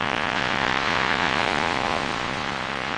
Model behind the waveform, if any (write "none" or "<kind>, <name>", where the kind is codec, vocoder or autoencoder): vocoder, Vocos